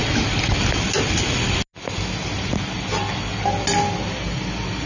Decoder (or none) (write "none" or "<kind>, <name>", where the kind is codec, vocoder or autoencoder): none